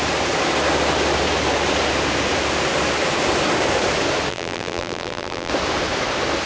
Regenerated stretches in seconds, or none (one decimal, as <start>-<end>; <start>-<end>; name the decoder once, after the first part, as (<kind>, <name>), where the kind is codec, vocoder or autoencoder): 4.3-5.5 (vocoder, BigVGAN v2)